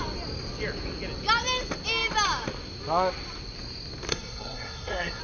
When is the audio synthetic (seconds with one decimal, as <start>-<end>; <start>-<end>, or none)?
4.1-5.2